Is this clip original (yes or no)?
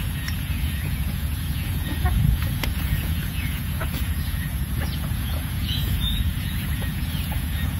no